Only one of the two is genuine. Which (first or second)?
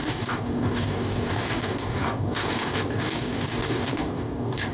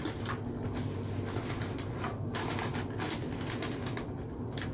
second